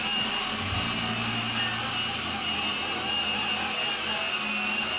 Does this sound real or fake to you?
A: real